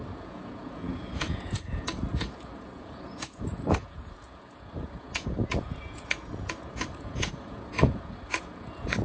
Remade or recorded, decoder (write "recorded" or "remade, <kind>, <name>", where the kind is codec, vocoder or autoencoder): remade, vocoder, Vocos